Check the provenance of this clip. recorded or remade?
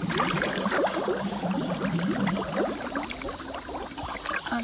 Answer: recorded